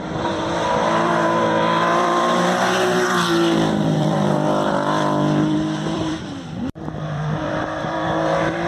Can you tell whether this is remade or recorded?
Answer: remade